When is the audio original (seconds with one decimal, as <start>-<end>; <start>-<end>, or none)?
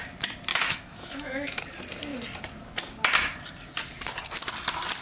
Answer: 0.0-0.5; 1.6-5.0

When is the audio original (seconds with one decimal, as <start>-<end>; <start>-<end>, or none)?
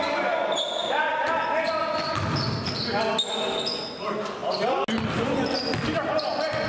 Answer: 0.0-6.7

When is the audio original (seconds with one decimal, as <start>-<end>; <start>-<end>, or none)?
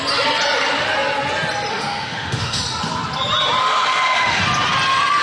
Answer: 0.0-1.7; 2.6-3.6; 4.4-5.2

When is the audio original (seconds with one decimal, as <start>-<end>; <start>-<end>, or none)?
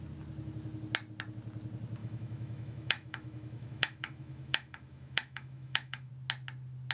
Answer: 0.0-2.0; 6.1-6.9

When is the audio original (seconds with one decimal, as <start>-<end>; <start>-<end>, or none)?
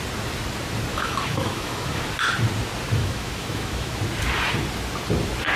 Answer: 0.0-0.9; 2.0-3.0; 3.9-5.6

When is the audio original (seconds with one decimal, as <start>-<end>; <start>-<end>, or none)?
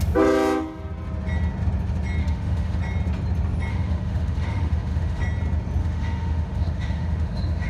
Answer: 0.0-2.2; 2.8-3.7; 5.2-5.8